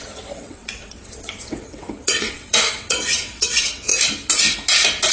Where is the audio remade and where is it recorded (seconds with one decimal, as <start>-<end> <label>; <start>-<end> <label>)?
0.0-3.9 remade; 3.9-5.1 recorded